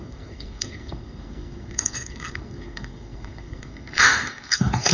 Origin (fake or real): fake